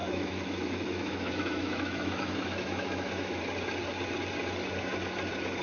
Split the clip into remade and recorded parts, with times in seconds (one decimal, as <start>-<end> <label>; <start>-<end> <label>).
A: 0.0-3.4 remade; 3.4-5.6 recorded